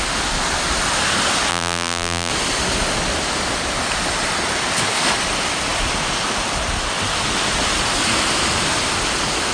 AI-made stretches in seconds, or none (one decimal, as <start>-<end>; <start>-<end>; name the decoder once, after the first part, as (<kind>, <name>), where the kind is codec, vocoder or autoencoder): 1.5-2.3 (vocoder, BigVGAN v2)